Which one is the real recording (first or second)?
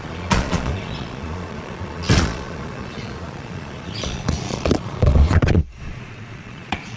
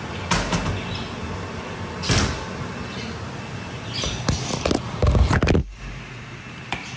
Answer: second